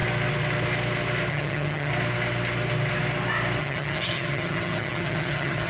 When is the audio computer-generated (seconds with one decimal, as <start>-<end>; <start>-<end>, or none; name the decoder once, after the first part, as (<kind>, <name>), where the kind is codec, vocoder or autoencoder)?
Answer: 1.3-1.9 (vocoder, HiFi-GAN); 3.6-5.7